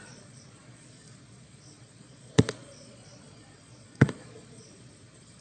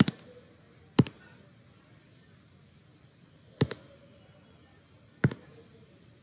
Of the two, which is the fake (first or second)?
first